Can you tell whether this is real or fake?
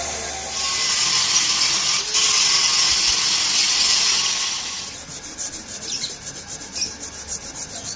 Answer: real